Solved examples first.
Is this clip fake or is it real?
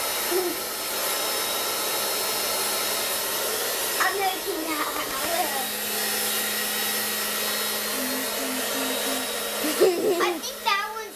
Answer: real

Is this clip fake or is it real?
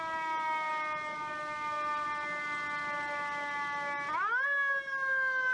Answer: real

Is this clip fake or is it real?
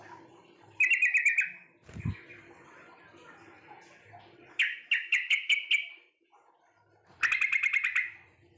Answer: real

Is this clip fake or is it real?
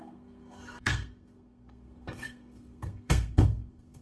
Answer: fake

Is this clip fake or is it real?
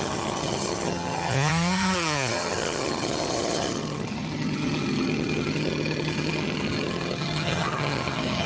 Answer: fake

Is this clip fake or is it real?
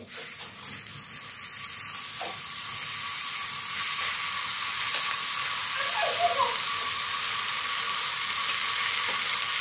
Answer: real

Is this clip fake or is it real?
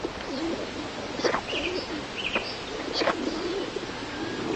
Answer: real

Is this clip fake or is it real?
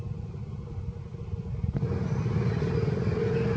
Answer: real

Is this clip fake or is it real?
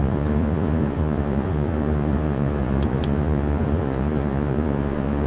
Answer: fake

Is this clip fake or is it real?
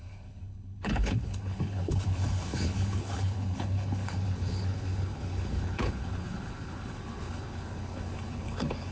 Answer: fake